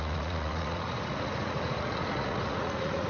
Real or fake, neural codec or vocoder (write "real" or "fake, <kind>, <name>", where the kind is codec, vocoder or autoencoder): fake, vocoder, Vocos